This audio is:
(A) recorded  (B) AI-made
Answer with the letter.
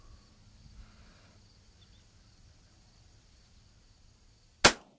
A